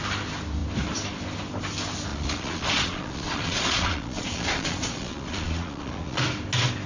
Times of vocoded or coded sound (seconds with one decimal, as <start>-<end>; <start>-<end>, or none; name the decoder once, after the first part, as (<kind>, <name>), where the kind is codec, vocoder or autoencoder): 2.1-6.2 (vocoder, Vocos)